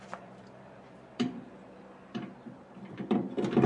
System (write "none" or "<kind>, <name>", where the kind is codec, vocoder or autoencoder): vocoder, BigVGAN v2